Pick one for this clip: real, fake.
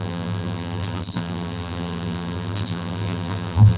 fake